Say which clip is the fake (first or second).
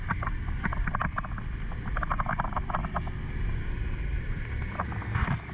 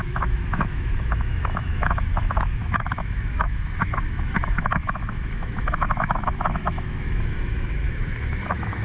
second